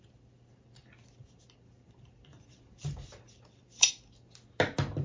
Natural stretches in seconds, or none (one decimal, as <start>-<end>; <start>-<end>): 0.0-2.3; 3.9-5.0